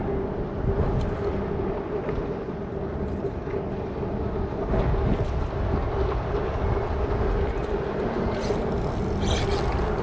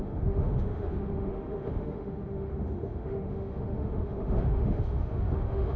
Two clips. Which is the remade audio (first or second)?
second